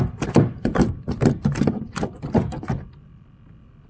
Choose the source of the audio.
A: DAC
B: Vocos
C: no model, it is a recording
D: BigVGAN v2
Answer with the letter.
C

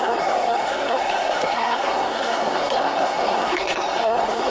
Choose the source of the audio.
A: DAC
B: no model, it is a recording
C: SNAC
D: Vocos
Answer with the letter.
C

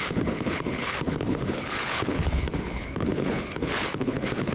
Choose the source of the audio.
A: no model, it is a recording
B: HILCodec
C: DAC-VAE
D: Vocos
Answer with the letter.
B